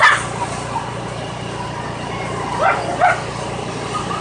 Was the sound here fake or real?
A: real